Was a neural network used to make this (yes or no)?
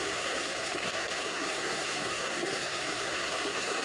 yes